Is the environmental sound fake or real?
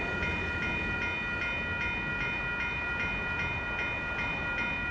real